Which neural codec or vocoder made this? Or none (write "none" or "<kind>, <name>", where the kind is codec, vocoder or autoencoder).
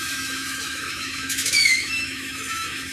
autoencoder, DAC-VAE